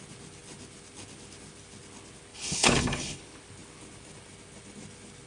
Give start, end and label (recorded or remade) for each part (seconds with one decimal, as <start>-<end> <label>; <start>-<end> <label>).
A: 0.0-2.3 recorded; 2.3-3.2 remade; 3.2-5.3 recorded